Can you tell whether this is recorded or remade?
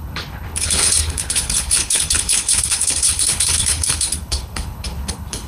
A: remade